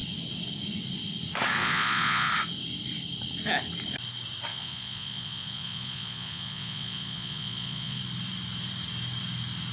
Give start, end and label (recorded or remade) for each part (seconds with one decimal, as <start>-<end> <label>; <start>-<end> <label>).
0.0-1.6 recorded; 1.6-2.3 remade; 2.3-4.5 recorded; 4.5-8.0 remade; 8.0-9.7 recorded